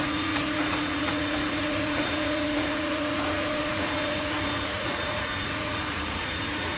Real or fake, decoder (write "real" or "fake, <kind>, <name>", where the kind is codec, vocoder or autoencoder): fake, vocoder, Vocos